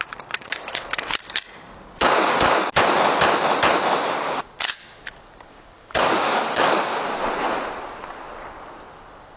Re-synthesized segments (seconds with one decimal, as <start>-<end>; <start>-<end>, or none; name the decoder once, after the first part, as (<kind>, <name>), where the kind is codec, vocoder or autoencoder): 5.5-6.9 (codec, DAC)